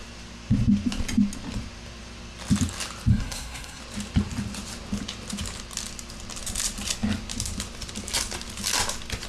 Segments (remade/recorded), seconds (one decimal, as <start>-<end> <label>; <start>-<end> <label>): 0.0-3.1 recorded; 3.1-3.8 remade; 3.8-9.3 recorded